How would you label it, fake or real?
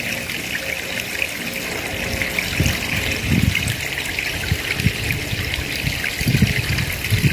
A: real